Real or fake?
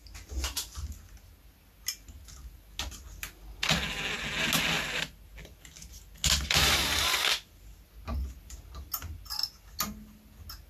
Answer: real